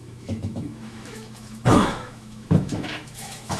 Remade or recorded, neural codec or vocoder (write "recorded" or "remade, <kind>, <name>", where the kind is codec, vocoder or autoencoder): remade, autoencoder, DAC-VAE